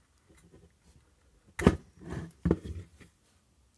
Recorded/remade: recorded